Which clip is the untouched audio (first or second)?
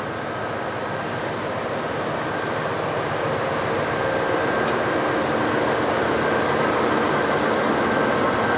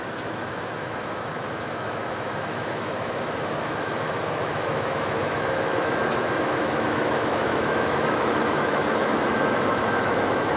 first